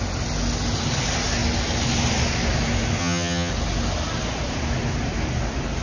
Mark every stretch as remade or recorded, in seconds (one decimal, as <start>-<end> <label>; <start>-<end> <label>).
0.0-3.0 recorded; 3.0-3.5 remade; 3.5-5.8 recorded